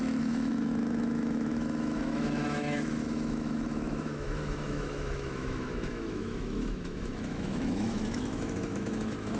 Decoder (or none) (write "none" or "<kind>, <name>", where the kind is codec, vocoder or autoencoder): autoencoder, DAC-VAE